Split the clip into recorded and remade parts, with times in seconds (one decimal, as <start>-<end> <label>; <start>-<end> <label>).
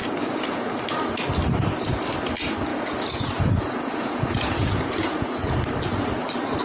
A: 0.0-2.7 recorded; 2.7-5.3 remade; 5.3-6.6 recorded